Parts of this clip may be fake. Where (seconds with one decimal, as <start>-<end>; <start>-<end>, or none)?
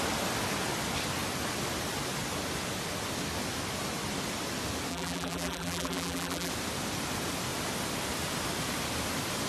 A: 4.9-6.5